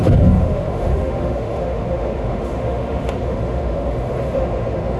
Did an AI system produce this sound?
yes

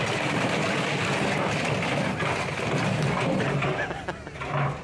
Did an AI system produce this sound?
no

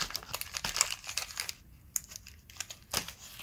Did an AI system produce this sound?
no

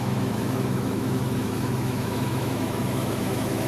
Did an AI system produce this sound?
yes